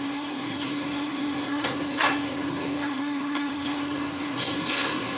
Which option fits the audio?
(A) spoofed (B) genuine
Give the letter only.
A